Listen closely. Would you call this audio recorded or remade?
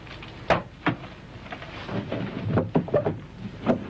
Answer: recorded